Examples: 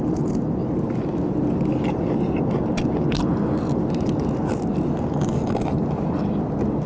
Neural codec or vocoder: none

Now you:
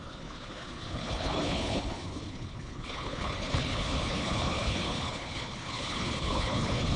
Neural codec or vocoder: codec, HILCodec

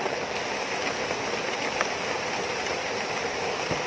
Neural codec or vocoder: none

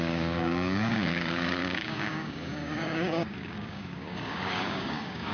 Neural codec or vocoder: codec, DAC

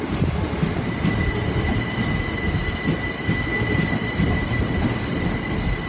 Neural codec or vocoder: none